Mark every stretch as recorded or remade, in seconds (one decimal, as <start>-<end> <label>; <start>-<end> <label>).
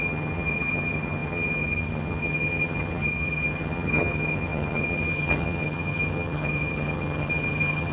0.0-7.9 remade